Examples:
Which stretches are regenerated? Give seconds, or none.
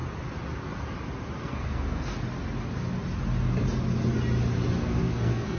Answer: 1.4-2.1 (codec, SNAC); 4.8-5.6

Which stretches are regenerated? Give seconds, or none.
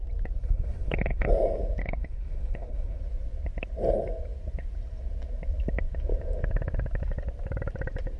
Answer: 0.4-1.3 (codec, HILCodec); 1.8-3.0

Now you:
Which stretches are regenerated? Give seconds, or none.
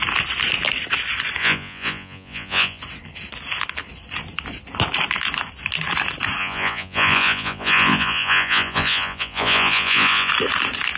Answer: 1.4-2.8 (vocoder, Vocos); 6.4-10.3